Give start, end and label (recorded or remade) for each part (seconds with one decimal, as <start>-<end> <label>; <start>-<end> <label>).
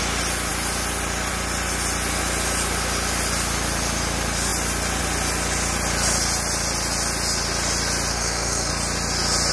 0.0-8.1 recorded; 8.1-8.7 remade; 8.7-9.5 recorded